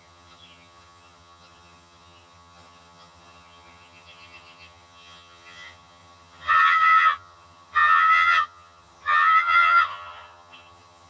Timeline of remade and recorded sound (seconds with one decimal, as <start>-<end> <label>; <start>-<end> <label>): 0.0-11.1 remade